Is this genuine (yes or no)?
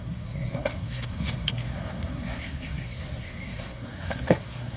no